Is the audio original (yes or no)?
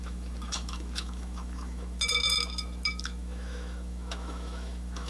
no